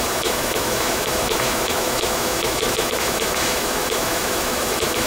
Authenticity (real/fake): fake